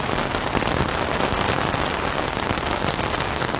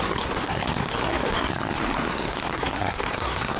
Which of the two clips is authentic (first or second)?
first